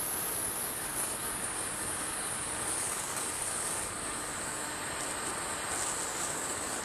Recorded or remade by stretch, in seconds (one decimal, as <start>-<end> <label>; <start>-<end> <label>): 0.0-0.6 recorded; 0.6-4.7 remade; 4.7-6.1 recorded; 6.1-6.8 remade

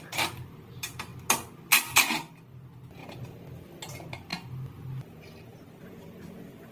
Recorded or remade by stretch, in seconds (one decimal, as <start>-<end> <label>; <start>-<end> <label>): 0.0-6.7 recorded

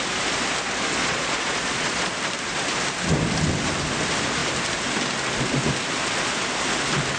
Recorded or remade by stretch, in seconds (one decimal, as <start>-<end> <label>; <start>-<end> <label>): 0.0-1.0 recorded; 1.0-2.0 remade; 2.0-7.2 recorded

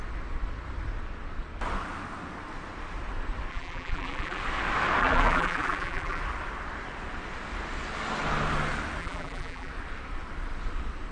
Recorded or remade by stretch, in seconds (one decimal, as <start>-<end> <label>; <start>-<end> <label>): 0.0-3.5 recorded; 3.5-4.4 remade; 4.4-5.0 recorded; 5.0-6.2 remade; 6.2-9.0 recorded; 9.0-9.7 remade; 9.7-11.1 recorded

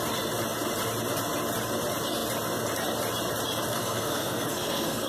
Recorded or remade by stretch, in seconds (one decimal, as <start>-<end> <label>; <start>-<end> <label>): 0.0-3.7 recorded; 3.7-5.1 remade

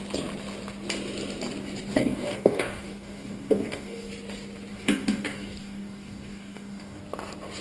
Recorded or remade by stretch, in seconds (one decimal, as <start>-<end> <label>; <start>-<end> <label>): 0.0-1.9 recorded; 1.9-4.1 remade; 4.1-4.7 recorded; 4.7-7.0 remade; 7.0-7.6 recorded